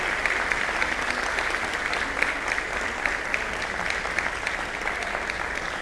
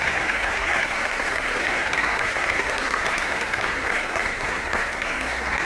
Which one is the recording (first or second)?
first